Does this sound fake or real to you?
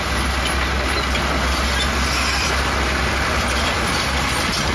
real